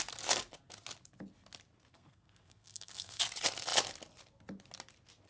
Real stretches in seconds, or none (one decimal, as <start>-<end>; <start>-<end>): 0.0-1.9; 3.2-5.3